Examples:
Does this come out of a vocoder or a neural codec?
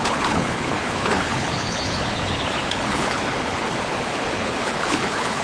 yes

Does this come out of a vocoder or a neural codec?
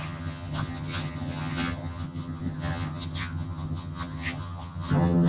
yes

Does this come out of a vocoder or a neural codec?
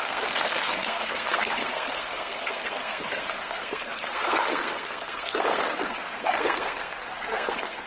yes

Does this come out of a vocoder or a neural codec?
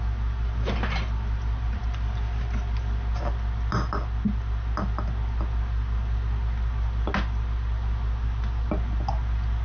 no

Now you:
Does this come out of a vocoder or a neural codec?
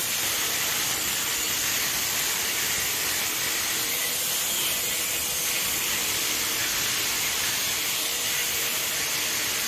yes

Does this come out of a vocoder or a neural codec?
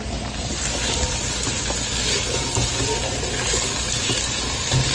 no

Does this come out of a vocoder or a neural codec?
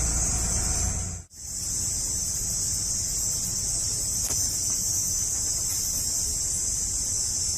no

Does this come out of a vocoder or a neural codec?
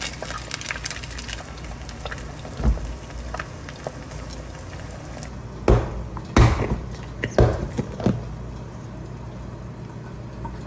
no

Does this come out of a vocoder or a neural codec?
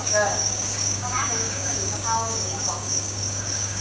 yes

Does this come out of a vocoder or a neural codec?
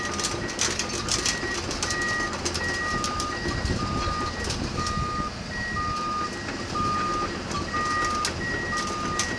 no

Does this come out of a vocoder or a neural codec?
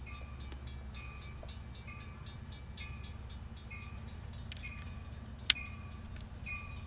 no